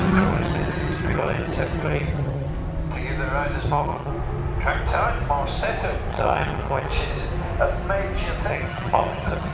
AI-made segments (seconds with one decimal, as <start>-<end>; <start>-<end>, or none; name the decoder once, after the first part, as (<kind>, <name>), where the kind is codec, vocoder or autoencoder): 0.0-2.5 (vocoder, HiFi-GAN); 3.6-4.1; 6.1-6.9; 8.5-9.5